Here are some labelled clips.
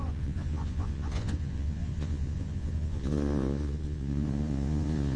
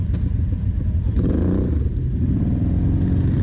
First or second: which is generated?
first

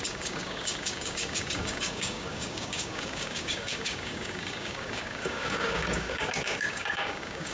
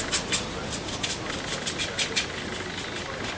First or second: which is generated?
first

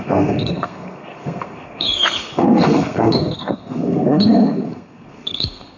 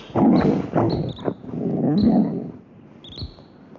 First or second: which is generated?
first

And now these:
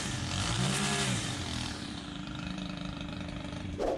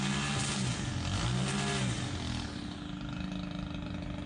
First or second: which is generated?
first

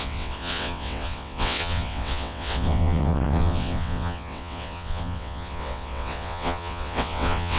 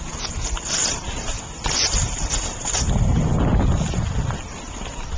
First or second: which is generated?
first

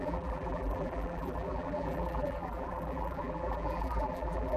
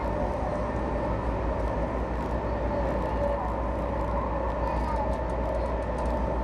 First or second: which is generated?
first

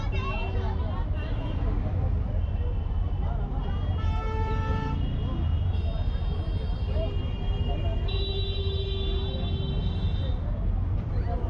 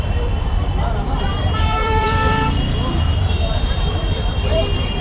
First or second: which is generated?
second